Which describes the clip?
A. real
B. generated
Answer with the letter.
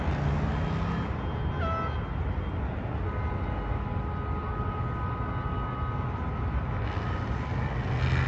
A